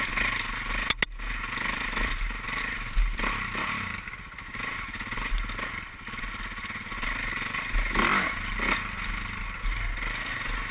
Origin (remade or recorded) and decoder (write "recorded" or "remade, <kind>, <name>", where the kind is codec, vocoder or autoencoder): recorded